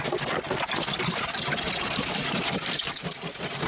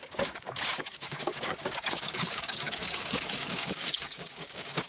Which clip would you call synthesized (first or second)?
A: second